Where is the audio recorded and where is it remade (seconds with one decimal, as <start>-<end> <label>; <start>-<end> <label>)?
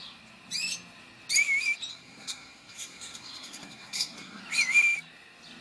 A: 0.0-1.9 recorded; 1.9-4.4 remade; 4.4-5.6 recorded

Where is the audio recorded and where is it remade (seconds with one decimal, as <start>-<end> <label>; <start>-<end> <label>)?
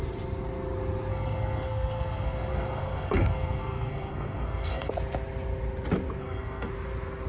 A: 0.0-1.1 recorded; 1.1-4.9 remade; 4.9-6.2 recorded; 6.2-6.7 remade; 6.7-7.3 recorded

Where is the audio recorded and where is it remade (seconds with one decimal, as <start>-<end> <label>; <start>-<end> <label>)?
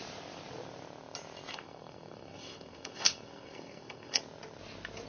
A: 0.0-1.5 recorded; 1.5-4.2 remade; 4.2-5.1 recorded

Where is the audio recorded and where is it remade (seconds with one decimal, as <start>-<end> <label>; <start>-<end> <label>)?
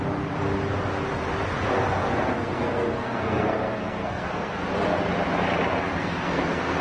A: 0.0-2.0 recorded; 2.0-4.6 remade; 4.6-6.0 recorded; 6.0-6.8 remade